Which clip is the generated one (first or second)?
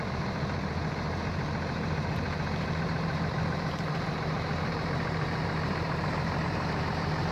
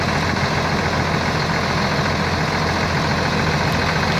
first